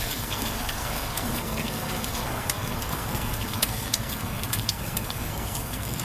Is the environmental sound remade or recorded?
remade